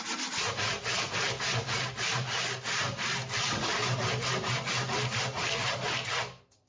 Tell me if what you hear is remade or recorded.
recorded